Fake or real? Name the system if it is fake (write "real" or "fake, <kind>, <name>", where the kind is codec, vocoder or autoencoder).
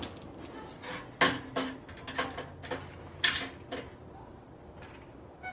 real